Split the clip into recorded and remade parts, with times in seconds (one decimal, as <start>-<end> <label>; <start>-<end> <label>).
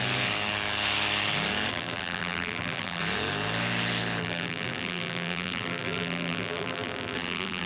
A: 0.0-1.7 recorded; 1.7-3.0 remade; 3.0-4.2 recorded; 4.2-7.7 remade